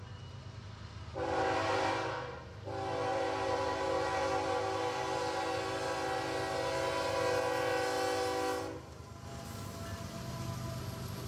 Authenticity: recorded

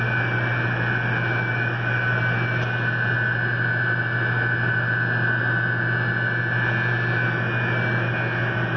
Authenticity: recorded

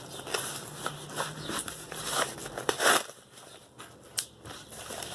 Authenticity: recorded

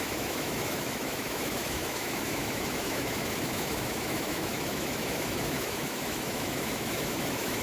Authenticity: remade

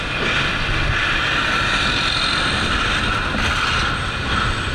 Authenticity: recorded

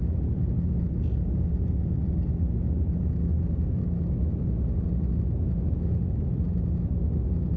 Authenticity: recorded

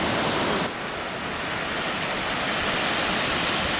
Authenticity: recorded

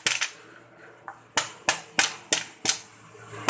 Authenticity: recorded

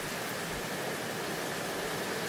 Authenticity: recorded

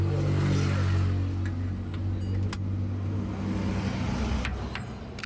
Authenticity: recorded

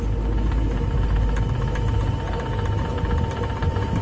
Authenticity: recorded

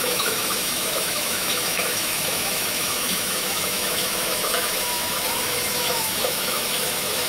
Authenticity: remade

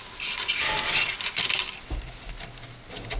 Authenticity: recorded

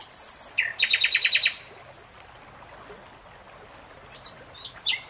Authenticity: recorded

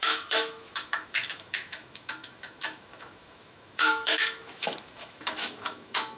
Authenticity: remade